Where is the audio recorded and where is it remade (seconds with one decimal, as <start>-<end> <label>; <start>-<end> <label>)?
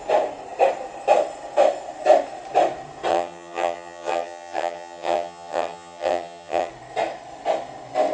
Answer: 0.0-3.1 recorded; 3.1-6.7 remade; 6.7-8.1 recorded